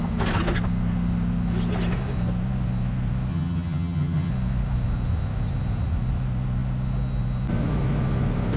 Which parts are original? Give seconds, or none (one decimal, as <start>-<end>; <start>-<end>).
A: 0.0-3.3; 4.3-8.6